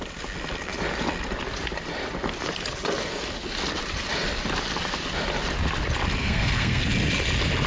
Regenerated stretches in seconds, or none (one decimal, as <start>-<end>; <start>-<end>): 6.2-6.8